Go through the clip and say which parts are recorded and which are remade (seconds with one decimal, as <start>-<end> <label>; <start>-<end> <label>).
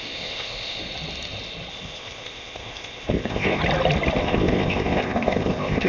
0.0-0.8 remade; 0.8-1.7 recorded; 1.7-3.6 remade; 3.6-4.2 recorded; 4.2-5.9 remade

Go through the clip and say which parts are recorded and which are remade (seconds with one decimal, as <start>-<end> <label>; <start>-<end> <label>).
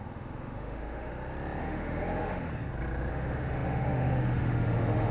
0.0-1.1 remade; 1.1-1.6 recorded; 1.6-2.5 remade; 2.5-3.1 recorded; 3.1-5.1 remade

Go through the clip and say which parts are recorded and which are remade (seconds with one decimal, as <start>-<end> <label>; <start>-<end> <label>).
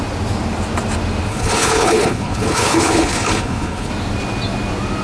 0.0-1.3 recorded; 1.3-3.9 remade; 3.9-5.0 recorded